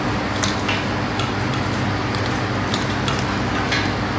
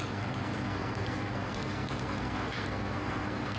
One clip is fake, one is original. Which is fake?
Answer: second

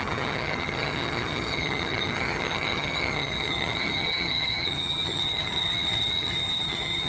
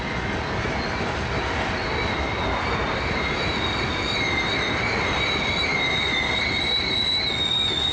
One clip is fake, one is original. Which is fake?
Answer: first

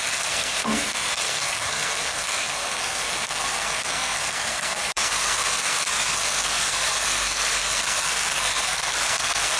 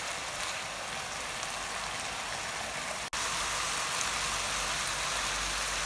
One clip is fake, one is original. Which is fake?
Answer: first